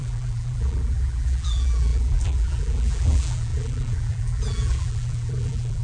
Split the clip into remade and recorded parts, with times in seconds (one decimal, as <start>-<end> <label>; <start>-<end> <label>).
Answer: 0.0-5.8 remade